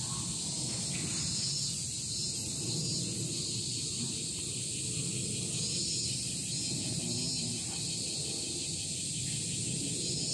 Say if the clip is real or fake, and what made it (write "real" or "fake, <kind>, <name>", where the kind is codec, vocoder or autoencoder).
real